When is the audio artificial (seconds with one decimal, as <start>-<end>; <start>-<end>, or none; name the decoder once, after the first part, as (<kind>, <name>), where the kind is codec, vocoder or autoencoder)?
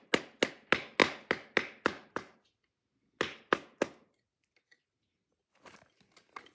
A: none